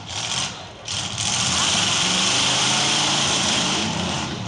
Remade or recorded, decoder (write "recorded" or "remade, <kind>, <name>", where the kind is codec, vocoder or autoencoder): remade, vocoder, BigVGAN v2